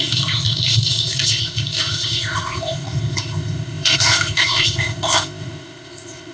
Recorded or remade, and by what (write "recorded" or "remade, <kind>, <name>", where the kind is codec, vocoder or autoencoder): remade, codec, ZipCodec